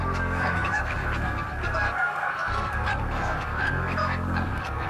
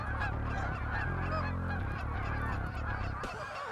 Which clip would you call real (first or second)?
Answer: second